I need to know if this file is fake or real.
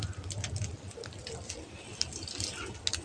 real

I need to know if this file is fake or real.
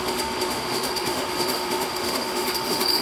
fake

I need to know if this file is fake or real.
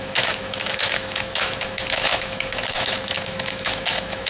fake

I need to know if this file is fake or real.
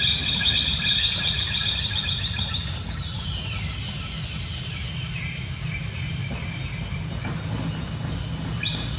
real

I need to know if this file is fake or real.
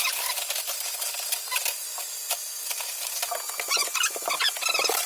real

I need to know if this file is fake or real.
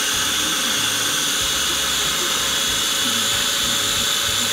real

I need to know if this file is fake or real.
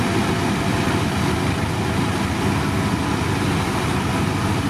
real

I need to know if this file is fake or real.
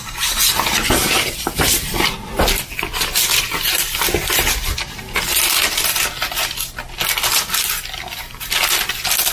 real